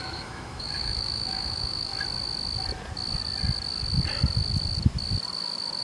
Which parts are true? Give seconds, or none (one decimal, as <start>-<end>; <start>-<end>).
1.9-5.8